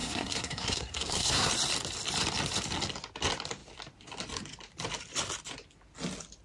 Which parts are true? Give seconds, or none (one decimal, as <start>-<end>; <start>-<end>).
1.5-6.4